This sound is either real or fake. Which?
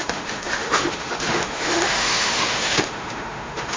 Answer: fake